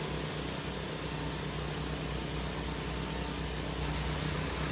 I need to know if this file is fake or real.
real